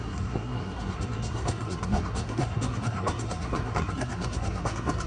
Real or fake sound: fake